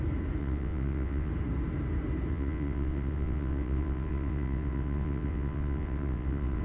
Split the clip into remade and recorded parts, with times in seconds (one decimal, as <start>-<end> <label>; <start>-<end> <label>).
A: 0.0-0.4 recorded; 0.4-1.3 remade; 1.3-2.3 recorded; 2.3-6.6 remade